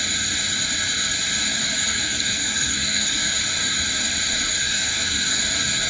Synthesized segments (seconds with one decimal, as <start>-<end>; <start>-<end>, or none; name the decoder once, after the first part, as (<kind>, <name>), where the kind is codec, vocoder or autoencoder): 1.9-3.3 (codec, SNAC); 4.6-5.4